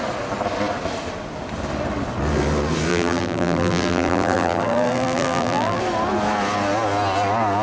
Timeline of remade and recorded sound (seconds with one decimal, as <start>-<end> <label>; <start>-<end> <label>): 0.0-2.9 recorded; 2.9-5.8 remade; 5.8-7.6 recorded